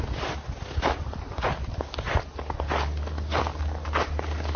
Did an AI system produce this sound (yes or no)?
no